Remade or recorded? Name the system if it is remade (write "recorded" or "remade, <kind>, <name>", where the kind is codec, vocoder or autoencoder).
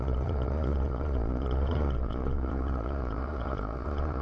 remade, vocoder, Vocos